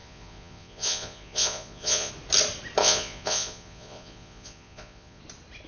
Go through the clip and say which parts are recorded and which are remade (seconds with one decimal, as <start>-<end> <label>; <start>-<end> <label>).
0.0-2.1 remade; 2.1-2.8 recorded; 2.8-5.2 remade; 5.2-5.7 recorded